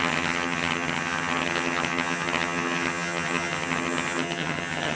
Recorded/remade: remade